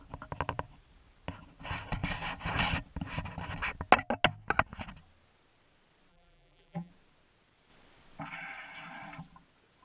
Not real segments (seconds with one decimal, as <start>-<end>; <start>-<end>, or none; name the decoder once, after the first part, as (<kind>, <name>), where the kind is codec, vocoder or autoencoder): 6.1-6.9 (vocoder, BigVGAN v2)